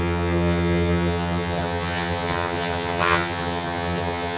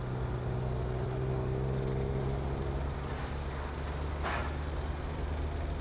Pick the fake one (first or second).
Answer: first